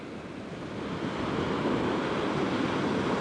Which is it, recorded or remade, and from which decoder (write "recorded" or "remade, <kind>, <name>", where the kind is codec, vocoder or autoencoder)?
recorded